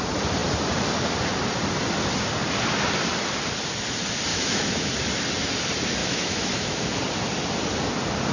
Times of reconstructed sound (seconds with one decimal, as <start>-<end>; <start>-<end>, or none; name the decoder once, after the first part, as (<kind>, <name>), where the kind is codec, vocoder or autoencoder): 4.3-4.9 (autoencoder, DAC-VAE); 6.0-6.8